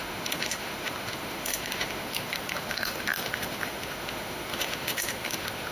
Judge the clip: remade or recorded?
remade